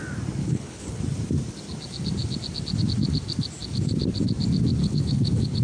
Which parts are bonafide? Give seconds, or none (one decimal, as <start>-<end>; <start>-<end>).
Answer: 0.0-0.4; 1.0-4.8